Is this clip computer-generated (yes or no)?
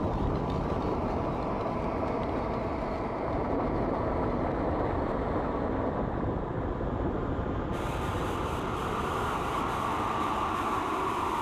no